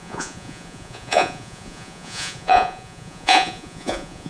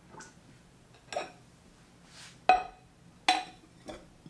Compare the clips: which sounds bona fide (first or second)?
second